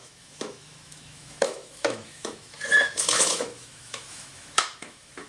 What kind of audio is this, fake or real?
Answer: fake